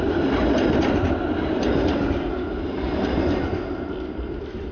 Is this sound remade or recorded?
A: recorded